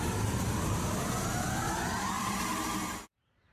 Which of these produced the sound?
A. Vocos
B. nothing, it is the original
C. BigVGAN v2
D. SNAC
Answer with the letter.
C